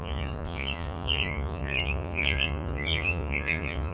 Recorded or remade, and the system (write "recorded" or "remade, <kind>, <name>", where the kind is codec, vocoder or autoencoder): remade, vocoder, Vocos